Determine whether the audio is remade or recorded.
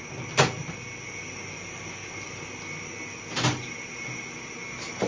recorded